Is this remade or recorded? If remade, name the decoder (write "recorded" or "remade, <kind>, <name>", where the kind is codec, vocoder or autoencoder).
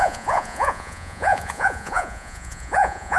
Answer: remade, vocoder, Vocos